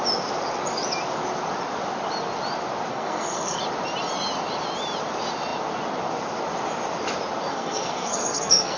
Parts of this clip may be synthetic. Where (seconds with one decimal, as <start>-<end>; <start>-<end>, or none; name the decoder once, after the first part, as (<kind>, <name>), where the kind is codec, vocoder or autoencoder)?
2.9-3.6 (codec, SNAC); 7.5-8.8